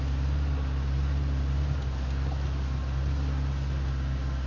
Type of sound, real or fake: real